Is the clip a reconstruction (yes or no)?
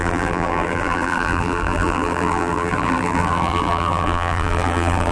yes